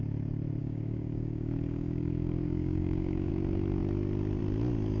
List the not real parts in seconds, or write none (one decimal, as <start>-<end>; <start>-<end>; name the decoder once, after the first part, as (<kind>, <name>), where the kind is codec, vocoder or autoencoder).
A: 0.6-3.3 (codec, DAC)